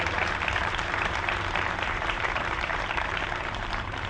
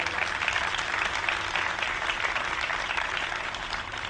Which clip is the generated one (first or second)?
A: first